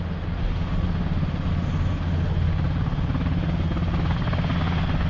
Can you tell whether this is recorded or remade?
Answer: recorded